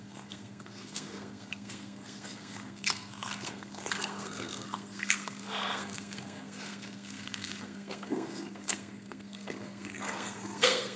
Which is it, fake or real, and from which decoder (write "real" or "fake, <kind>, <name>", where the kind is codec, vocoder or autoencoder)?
fake, codec, SNAC